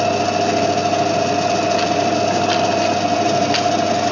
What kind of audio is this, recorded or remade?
recorded